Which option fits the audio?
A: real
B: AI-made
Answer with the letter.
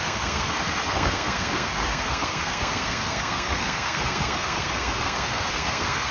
B